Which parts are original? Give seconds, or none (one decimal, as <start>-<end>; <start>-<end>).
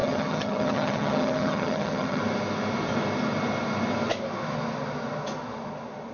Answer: 2.2-6.1